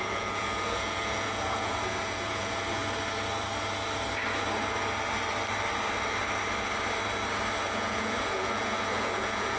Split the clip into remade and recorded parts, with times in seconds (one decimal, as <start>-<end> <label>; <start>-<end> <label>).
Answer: 0.0-2.8 remade; 2.8-7.6 recorded; 7.6-9.6 remade